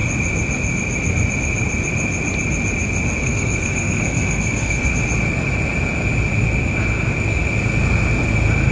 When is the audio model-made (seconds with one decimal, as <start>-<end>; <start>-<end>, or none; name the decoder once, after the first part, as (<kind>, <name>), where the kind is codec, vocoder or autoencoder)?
3.2-4.9 (codec, SNAC)